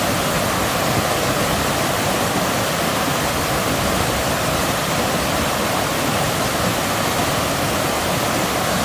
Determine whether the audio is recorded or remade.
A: recorded